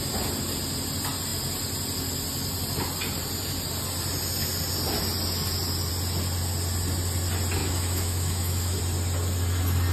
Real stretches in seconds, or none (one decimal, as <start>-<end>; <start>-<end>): 0.0-7.6; 8.8-9.9